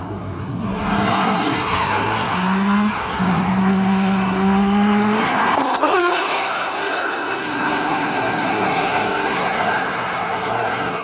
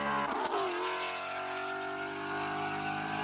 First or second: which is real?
second